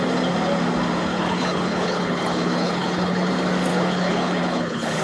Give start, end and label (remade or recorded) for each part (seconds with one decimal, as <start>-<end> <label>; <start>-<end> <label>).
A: 0.0-1.1 recorded; 1.1-3.3 remade; 3.3-3.7 recorded; 3.7-5.0 remade